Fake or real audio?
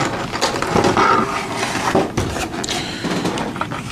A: real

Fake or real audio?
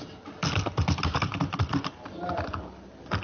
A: real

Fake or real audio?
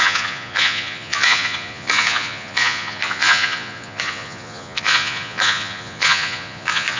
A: fake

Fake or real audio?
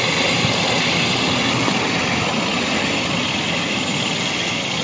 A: real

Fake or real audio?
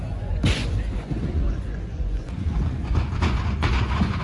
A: fake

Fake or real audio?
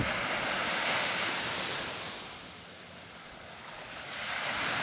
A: real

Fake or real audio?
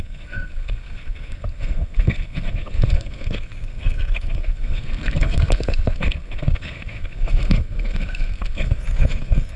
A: fake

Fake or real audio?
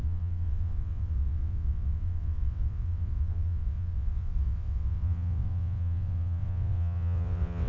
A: fake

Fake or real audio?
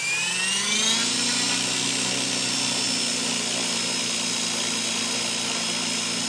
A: real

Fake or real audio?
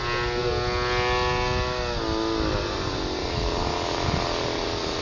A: real